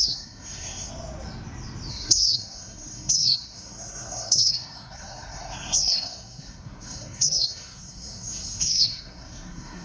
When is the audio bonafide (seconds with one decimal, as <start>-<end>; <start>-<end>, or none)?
0.9-1.9